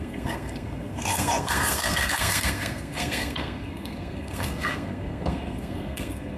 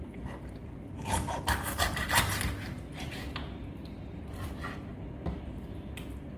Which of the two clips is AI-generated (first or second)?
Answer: first